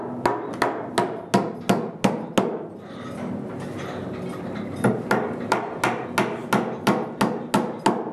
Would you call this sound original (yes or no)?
yes